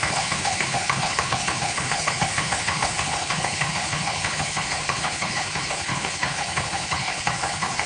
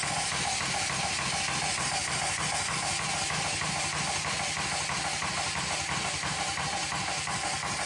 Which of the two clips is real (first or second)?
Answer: second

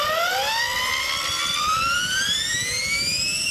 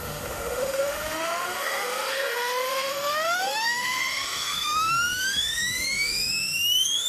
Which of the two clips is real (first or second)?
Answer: first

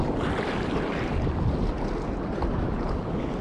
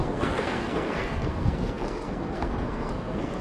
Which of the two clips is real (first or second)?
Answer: first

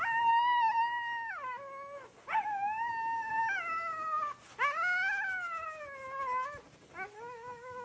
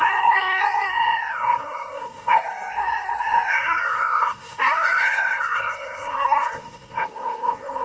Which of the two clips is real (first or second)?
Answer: first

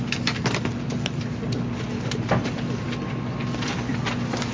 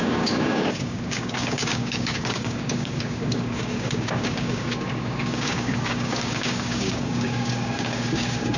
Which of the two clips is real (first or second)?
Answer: first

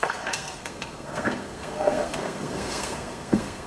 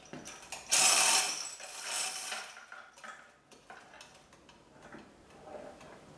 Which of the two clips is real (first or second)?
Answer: second